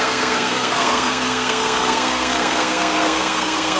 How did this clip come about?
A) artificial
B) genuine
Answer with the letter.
A